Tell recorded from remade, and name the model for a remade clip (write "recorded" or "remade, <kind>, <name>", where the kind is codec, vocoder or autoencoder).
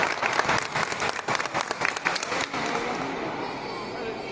recorded